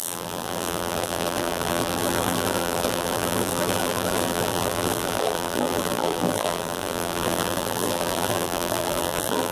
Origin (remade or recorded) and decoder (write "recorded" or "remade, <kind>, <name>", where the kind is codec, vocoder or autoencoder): remade, vocoder, BigVGAN v2